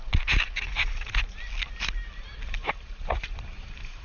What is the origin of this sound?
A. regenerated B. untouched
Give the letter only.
B